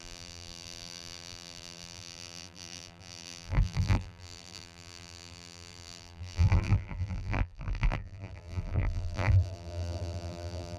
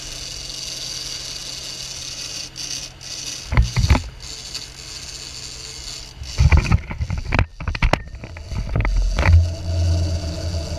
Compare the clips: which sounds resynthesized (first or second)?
first